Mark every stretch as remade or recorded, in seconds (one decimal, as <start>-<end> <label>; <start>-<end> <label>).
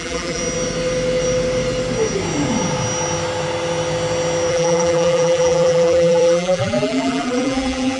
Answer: 0.0-0.4 remade; 0.4-4.5 recorded; 4.5-8.0 remade